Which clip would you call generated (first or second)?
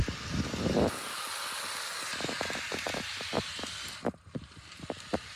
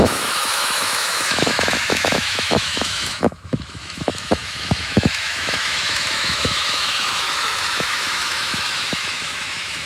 second